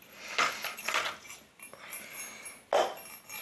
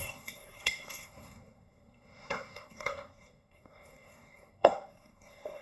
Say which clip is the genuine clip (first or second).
first